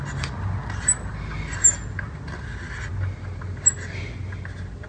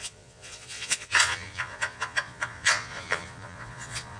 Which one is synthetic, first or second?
second